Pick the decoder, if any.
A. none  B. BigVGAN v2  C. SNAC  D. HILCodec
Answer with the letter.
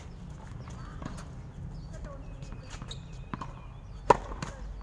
A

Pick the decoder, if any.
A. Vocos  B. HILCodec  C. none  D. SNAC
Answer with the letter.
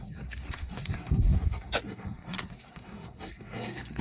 D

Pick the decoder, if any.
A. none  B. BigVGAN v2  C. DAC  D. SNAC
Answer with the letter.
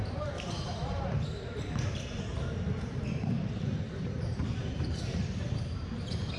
B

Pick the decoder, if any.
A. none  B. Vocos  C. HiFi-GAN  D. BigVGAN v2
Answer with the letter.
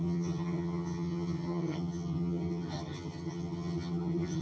C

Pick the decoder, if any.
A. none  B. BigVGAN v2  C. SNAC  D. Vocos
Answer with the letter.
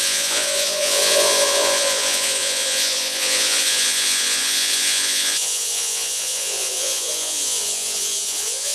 D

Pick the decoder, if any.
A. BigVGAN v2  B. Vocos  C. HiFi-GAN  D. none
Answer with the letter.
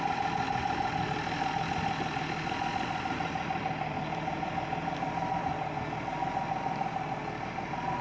D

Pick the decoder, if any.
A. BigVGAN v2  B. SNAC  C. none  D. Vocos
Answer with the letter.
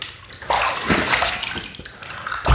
C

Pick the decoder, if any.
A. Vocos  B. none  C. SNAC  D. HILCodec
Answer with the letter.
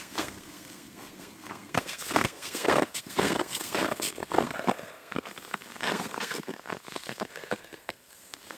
C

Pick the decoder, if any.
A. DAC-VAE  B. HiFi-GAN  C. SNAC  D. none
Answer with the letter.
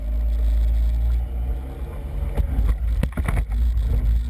D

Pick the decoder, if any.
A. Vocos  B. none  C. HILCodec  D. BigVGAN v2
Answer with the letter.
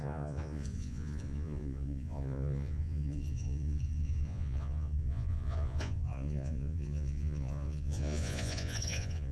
A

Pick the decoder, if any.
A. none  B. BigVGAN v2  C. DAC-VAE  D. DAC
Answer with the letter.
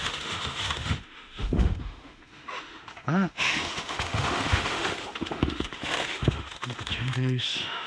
C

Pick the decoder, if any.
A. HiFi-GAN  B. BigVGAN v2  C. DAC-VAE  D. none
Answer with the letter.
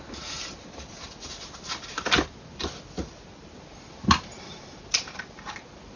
D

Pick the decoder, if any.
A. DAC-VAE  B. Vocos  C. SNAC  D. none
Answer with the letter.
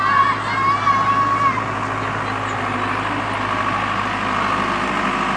D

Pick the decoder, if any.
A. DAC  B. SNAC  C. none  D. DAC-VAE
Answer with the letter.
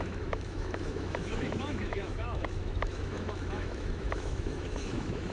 D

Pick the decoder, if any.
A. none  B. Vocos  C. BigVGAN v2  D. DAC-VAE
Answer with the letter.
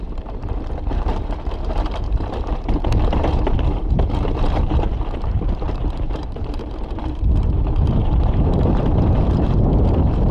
C